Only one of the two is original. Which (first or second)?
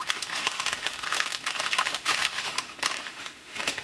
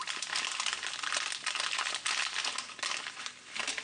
second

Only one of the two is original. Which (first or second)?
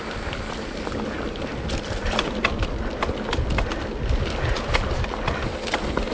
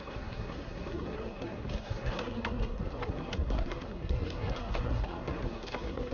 first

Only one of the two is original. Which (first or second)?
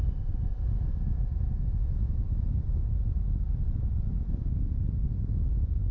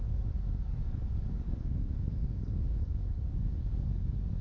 first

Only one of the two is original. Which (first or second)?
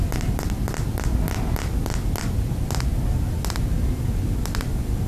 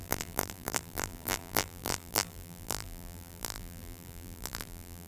first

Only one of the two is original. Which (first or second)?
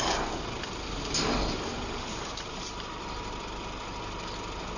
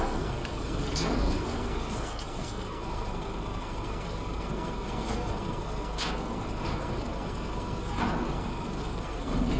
first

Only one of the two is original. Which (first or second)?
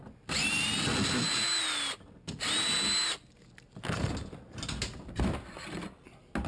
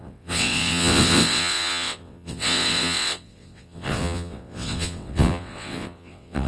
first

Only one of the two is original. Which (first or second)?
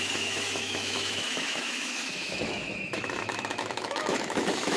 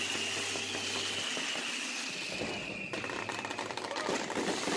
second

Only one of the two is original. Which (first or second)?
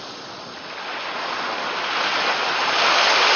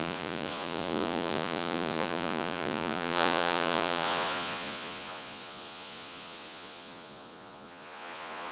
first